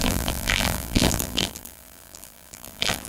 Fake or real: fake